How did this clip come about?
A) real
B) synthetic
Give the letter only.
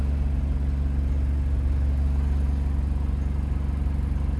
A